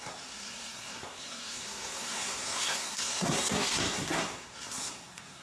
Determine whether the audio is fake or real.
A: fake